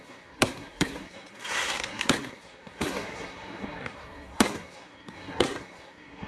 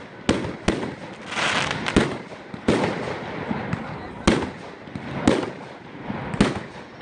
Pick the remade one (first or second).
first